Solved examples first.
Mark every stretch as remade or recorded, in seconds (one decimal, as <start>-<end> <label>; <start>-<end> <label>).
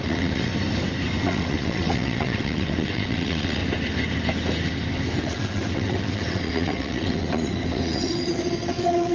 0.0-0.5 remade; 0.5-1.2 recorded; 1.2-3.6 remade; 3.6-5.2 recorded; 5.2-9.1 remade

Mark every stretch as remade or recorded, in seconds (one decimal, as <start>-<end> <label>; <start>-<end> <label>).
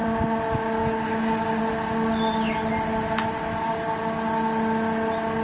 0.0-5.4 recorded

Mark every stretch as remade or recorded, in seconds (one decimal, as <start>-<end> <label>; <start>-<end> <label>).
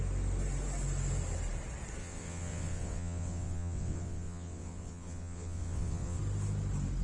0.0-2.0 recorded; 2.0-6.2 remade; 6.2-7.0 recorded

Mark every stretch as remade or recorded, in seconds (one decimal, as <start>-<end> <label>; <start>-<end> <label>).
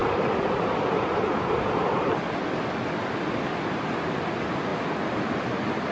0.0-5.9 recorded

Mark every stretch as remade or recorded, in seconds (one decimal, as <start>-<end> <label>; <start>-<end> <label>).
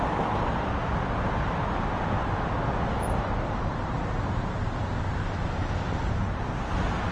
0.0-7.1 recorded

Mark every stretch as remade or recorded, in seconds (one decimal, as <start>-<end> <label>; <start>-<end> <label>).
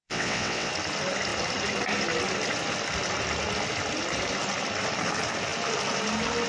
0.0-0.7 remade; 0.7-6.5 recorded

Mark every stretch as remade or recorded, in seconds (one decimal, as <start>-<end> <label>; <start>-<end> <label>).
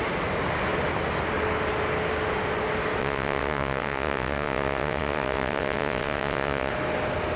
0.0-3.0 recorded; 3.0-6.7 remade; 6.7-7.4 recorded